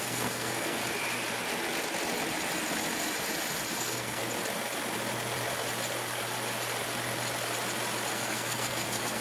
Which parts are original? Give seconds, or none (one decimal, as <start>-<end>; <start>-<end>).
0.8-3.8; 4.2-8.1